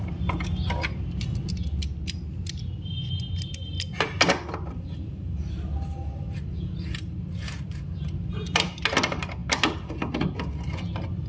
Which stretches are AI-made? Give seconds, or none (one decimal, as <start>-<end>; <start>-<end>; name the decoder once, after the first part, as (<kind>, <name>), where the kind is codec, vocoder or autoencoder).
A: none